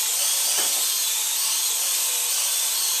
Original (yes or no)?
yes